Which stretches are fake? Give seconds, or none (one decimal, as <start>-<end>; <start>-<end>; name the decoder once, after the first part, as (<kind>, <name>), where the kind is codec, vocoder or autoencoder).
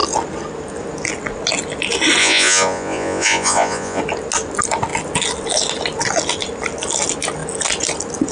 2.2-4.0 (vocoder, Vocos)